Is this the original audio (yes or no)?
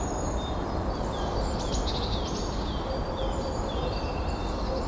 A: yes